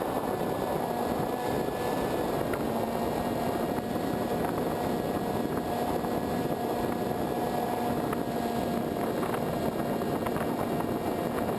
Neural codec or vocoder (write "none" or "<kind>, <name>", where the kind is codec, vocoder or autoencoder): none